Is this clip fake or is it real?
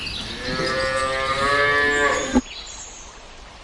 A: real